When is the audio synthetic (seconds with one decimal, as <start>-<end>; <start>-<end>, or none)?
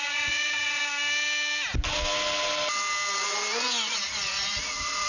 0.0-0.8; 3.9-5.1